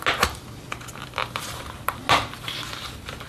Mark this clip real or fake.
real